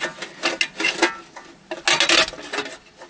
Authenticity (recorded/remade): recorded